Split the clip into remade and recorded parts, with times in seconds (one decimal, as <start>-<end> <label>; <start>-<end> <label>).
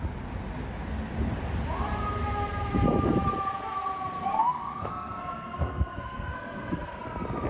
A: 0.0-4.3 recorded; 4.3-7.0 remade; 7.0-7.5 recorded